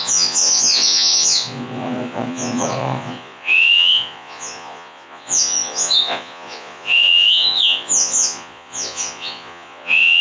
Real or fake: fake